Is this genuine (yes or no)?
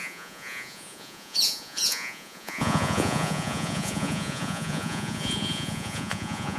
no